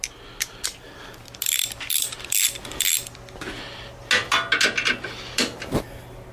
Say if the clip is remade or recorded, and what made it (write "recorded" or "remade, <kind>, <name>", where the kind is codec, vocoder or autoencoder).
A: recorded